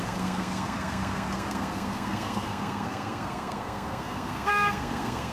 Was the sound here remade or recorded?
remade